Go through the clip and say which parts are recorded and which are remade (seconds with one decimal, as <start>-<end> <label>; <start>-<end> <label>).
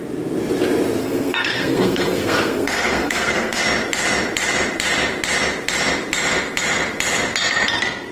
0.0-1.0 recorded; 1.0-3.6 remade; 3.6-8.1 recorded